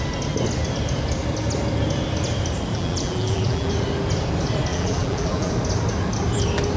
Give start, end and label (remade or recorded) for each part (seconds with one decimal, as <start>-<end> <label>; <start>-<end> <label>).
0.0-2.7 recorded; 2.7-3.7 remade; 3.7-4.7 recorded; 4.7-5.5 remade; 5.5-6.8 recorded